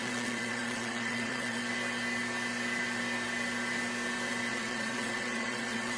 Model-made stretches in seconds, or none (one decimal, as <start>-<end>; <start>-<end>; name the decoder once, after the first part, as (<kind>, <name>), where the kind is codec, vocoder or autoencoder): 0.0-1.6 (vocoder, WaveNeXt); 4.5-6.0